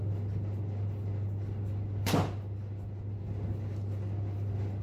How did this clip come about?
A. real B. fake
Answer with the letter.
A